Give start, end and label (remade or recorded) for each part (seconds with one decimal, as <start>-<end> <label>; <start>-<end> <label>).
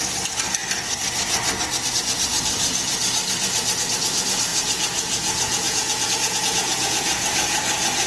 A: 0.0-4.5 recorded; 4.5-7.6 remade; 7.6-8.1 recorded